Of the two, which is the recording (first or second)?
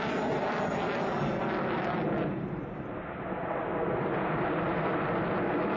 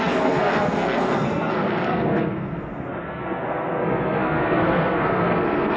first